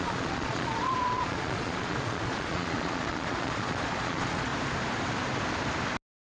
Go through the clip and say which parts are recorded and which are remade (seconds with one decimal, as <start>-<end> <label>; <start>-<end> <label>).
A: 0.0-4.5 remade; 4.5-6.2 recorded